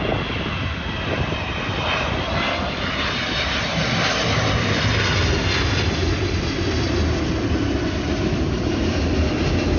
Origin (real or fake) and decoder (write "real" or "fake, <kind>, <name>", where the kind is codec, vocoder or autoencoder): real